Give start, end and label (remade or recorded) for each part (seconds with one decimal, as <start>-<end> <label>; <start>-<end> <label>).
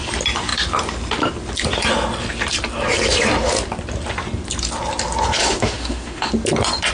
0.0-5.4 recorded; 5.4-6.3 remade; 6.3-6.9 recorded